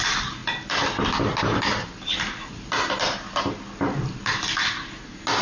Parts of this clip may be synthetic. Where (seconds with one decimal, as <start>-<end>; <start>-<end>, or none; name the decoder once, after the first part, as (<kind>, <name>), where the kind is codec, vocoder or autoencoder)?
none